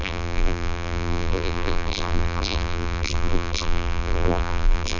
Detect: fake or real fake